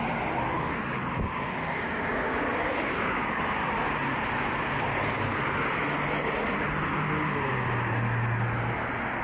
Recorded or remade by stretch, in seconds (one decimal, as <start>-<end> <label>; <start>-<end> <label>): 0.0-1.1 recorded; 1.1-3.7 remade; 3.7-9.2 recorded